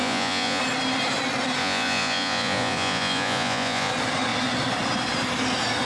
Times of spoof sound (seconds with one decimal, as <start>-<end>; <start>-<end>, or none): 0.0-0.6; 1.6-3.9